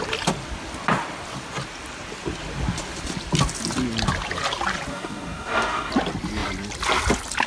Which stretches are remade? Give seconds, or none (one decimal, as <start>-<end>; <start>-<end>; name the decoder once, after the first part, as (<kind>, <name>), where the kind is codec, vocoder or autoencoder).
4.9-5.9 (codec, DAC)

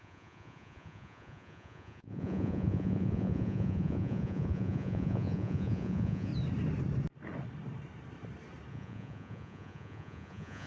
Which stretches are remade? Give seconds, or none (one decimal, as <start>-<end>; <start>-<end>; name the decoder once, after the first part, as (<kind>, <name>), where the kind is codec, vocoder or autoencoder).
0.0-6.3 (vocoder, Vocos); 8.7-10.7

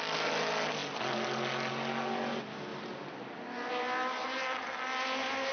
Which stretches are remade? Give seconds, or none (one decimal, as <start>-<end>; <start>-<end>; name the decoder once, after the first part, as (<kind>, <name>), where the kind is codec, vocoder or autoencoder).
none

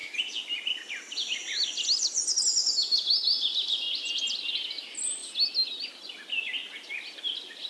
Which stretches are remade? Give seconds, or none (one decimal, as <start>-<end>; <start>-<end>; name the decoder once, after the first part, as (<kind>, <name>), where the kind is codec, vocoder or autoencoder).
none

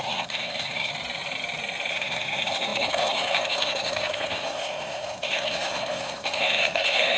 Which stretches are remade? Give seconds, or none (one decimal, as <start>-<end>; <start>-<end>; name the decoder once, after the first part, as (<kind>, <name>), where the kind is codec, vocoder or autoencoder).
0.0-0.9 (codec, SNAC); 1.9-7.2

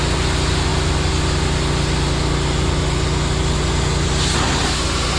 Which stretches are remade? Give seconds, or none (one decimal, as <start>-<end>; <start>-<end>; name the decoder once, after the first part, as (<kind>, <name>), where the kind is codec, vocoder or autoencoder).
none